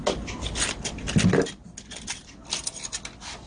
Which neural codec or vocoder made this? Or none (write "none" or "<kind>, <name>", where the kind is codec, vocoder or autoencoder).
none